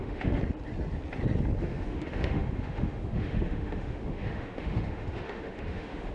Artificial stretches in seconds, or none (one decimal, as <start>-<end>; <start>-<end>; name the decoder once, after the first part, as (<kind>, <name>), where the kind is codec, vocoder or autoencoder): 0.0-0.4 (autoencoder, DAC-VAE); 1.6-6.1